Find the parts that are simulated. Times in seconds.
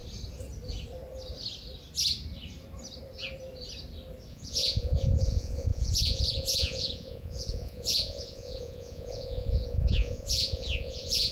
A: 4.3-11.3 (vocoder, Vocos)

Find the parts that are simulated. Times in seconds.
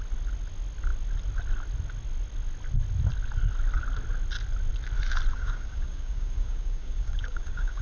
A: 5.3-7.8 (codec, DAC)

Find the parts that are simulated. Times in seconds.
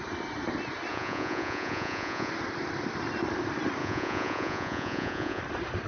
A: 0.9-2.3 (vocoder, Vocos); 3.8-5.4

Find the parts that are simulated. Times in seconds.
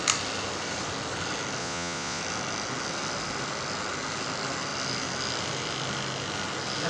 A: 1.6-2.2 (vocoder, Vocos)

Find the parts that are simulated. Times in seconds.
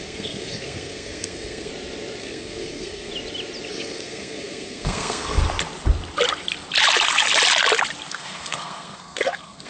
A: 0.0-1.7 (codec, SNAC); 2.2-3.1; 3.7-5.4; 8.1-9.7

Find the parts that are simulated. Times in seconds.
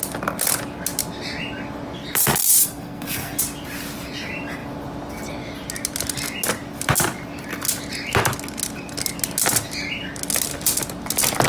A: 2.6-3.4 (codec, SNAC)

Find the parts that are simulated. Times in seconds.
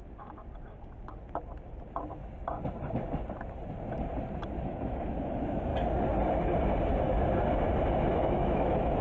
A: 4.6-5.7 (autoencoder, DAC-VAE); 8.1-9.0